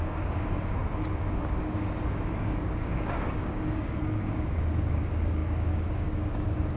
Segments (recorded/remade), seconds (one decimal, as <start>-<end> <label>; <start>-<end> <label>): 0.0-6.8 remade